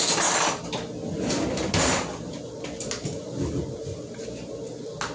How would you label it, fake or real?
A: real